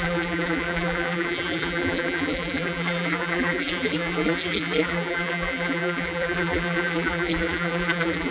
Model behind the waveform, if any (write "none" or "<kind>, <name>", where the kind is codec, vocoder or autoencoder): vocoder, BigVGAN v2